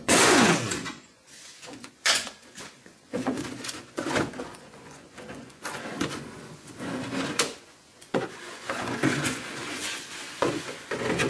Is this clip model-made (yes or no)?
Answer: yes